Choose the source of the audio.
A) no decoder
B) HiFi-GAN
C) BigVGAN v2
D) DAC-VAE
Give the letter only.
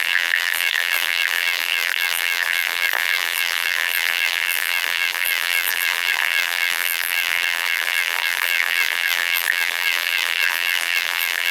C